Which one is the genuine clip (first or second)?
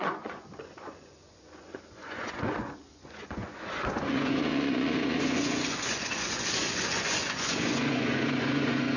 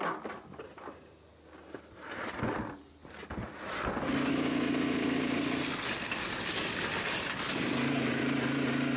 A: second